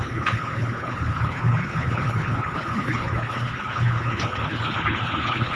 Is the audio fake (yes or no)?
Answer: yes